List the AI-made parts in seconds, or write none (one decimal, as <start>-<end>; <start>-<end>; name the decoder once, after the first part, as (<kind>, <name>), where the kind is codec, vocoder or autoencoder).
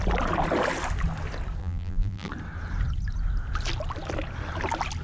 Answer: 1.6-2.3 (vocoder, BigVGAN v2)